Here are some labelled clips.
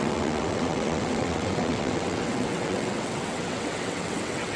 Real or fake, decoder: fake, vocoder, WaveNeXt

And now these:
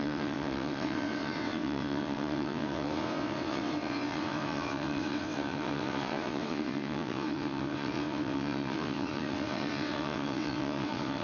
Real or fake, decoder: fake, vocoder, WaveNeXt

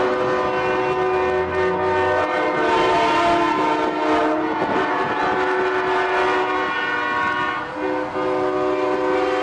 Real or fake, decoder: real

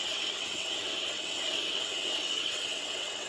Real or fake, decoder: fake, vocoder, WaveNeXt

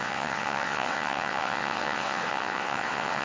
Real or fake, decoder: fake, vocoder, WaveNeXt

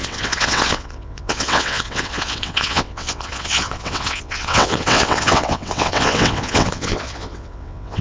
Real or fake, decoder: fake, vocoder, WaveNeXt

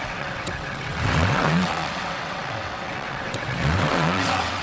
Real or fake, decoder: fake, vocoder, WaveNeXt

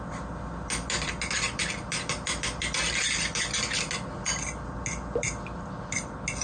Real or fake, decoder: real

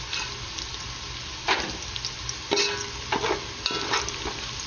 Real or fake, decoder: real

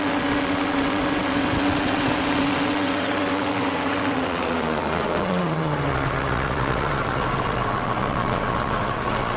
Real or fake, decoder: fake, vocoder, WaveNeXt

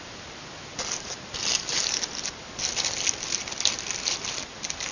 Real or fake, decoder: real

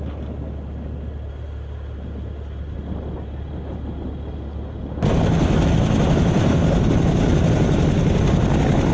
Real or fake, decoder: real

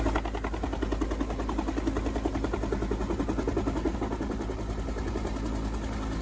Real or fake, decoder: real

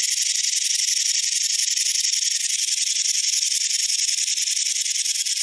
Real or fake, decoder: real